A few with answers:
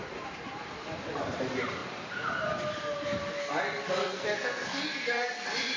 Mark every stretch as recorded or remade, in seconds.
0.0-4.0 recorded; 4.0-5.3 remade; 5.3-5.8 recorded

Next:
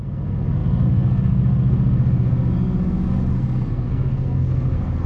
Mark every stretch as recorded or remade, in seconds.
0.0-5.1 remade

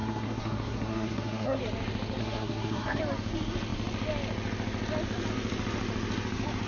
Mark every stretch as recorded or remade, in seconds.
0.0-1.6 remade; 1.6-2.2 recorded; 2.2-3.0 remade; 3.0-6.7 recorded

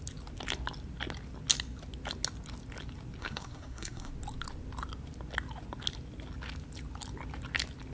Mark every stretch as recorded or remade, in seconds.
0.0-3.2 recorded; 3.2-4.1 remade; 4.1-7.9 recorded

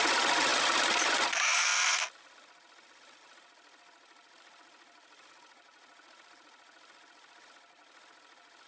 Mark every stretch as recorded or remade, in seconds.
0.0-8.7 recorded

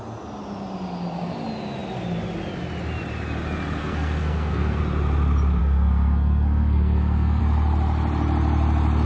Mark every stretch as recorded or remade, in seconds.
0.0-3.8 recorded; 3.8-4.8 remade; 4.8-5.6 recorded; 5.6-7.4 remade; 7.4-9.1 recorded